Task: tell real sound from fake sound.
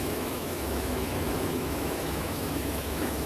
fake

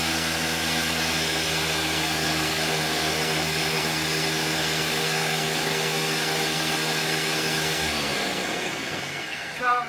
fake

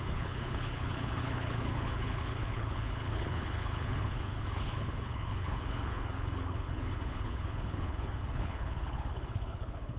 fake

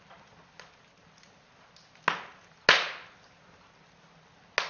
real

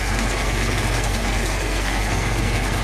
fake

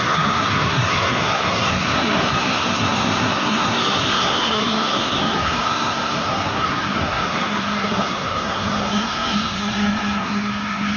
fake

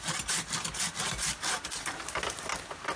real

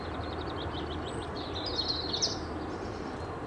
real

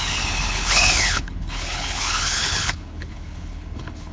fake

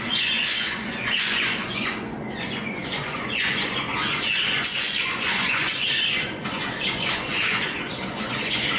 fake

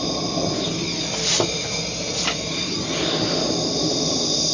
real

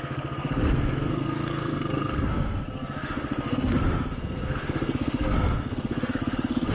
fake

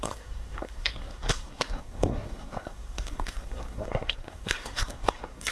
fake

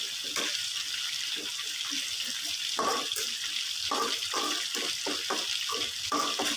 real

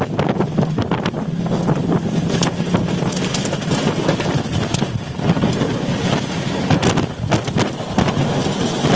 real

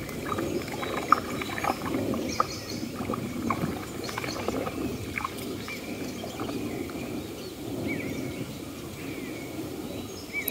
real